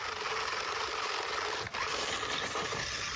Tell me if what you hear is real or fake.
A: real